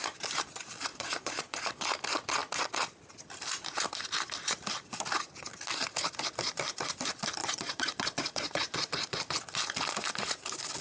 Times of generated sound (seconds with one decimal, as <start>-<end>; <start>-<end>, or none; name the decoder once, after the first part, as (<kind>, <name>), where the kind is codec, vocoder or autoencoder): 0.9-1.9 (vocoder, Vocos); 7.4-9.2